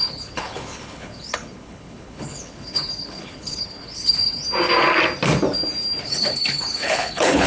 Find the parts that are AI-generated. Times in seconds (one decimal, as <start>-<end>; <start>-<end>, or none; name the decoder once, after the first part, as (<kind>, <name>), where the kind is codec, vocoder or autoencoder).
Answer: 0.0-4.4 (codec, HILCodec); 6.0-7.5